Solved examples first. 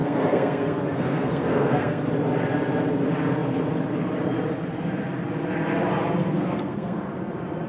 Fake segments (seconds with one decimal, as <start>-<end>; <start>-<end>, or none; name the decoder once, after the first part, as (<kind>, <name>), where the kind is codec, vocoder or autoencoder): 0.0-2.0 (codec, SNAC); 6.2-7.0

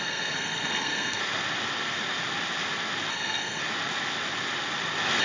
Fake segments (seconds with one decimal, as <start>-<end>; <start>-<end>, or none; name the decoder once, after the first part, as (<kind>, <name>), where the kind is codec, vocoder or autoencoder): 0.0-1.2 (codec, SNAC); 3.1-3.6

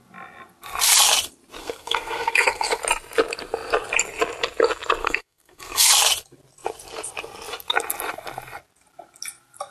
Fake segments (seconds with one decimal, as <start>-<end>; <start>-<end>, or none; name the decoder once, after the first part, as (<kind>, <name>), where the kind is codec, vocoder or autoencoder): 1.6-2.8 (codec, SNAC); 5.0-5.9

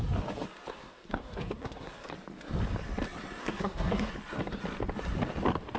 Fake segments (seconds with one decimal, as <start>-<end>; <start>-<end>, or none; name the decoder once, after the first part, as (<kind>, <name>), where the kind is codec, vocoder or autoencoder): 0.7-2.1 (codec, SNAC); 3.4-4.1

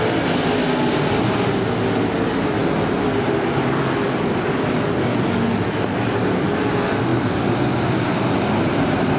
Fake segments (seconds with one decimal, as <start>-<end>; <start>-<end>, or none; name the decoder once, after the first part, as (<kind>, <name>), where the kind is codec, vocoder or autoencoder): none

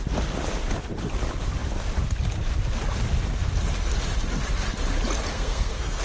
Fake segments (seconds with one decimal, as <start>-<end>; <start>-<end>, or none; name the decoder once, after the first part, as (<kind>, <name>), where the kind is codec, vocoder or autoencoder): 5.3-6.0 (codec, SNAC)

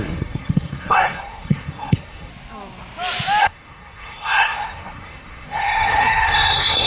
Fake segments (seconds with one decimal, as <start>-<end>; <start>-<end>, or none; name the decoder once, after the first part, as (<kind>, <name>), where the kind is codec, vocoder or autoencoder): 0.0-2.3 (codec, SNAC); 3.4-6.9

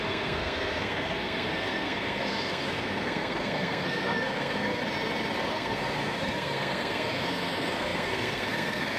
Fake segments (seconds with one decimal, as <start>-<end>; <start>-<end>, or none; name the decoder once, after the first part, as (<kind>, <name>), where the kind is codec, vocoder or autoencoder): 0.0-4.8 (codec, SNAC); 5.5-9.0